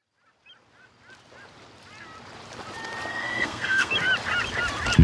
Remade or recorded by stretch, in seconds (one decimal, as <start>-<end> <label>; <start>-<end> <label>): 0.0-3.1 recorded; 3.1-3.9 remade; 3.9-5.0 recorded